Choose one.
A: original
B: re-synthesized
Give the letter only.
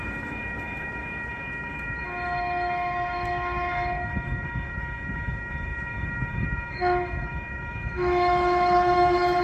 B